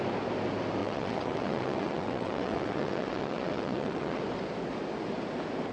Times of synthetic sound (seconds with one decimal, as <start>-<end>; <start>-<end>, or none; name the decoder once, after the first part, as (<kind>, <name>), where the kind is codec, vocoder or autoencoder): 0.8-4.2 (vocoder, WaveNeXt)